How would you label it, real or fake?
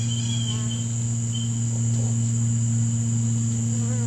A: real